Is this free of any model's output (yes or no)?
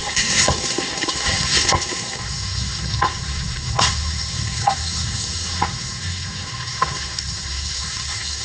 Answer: no